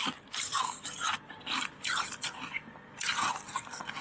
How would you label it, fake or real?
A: real